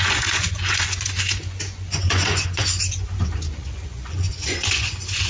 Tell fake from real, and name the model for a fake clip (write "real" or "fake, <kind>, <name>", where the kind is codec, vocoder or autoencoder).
fake, vocoder, Vocos